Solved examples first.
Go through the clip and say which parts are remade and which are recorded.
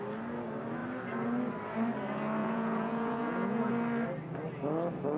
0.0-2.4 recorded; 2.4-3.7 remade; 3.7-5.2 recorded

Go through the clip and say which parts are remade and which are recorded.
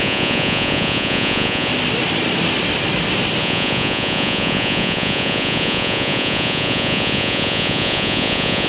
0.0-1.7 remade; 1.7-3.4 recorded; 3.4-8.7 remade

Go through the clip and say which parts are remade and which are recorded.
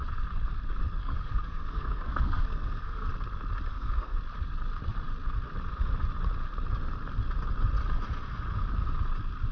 0.0-1.0 recorded; 1.0-3.1 remade; 3.1-3.7 recorded; 3.7-4.2 remade; 4.2-9.5 recorded